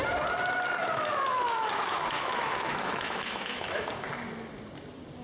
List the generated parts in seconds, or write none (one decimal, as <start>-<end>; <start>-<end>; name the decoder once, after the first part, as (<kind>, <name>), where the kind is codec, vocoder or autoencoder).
0.8-3.9 (autoencoder, DAC-VAE)